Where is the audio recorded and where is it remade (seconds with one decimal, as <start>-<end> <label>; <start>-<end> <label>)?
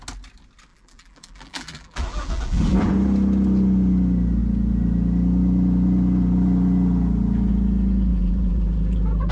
0.0-0.7 recorded; 0.7-2.9 remade; 2.9-8.1 recorded; 8.1-9.3 remade